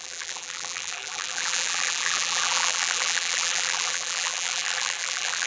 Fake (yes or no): yes